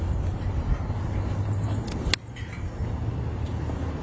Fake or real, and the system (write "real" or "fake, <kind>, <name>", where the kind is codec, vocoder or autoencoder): real